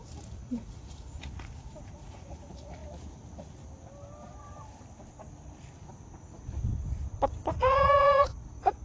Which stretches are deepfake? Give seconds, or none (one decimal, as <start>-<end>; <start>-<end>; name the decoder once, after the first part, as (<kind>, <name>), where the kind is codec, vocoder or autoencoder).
0.0-2.8 (vocoder, Vocos); 7.5-8.8

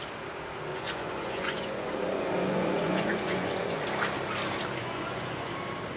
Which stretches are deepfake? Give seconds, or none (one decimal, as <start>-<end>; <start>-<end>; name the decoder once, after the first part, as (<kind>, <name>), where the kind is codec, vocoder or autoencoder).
0.7-3.8 (vocoder, Vocos); 4.8-5.5

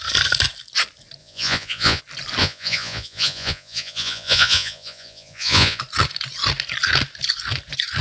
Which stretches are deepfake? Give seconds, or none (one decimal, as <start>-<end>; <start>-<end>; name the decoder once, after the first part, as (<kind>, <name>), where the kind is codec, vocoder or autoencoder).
1.2-2.0 (vocoder, Vocos); 2.4-5.8